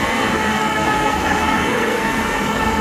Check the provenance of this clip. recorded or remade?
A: remade